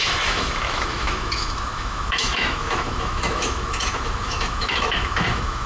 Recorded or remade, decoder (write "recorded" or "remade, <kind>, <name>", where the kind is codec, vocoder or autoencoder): remade, autoencoder, DAC-VAE